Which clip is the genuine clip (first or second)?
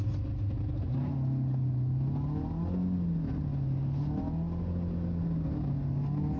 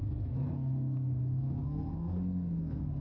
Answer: first